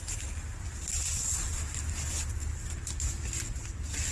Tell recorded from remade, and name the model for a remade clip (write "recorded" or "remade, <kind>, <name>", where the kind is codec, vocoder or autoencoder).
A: recorded